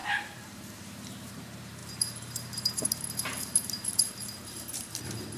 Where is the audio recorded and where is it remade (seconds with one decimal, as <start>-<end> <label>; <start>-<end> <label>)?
0.0-1.3 remade; 1.3-1.8 recorded; 1.8-5.0 remade; 5.0-5.4 recorded